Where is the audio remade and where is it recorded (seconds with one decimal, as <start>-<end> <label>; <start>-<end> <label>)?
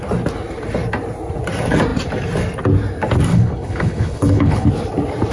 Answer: 0.0-3.3 recorded; 3.3-4.7 remade; 4.7-5.3 recorded